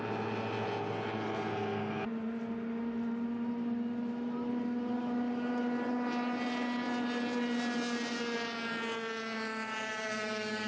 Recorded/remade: recorded